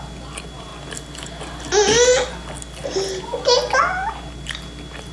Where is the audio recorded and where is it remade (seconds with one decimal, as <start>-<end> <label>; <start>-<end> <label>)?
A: 0.0-5.1 recorded